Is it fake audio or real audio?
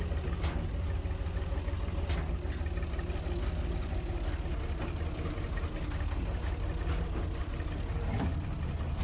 real